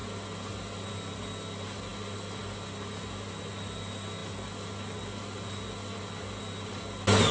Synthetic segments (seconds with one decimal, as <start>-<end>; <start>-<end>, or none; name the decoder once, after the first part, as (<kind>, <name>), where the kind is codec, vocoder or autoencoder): none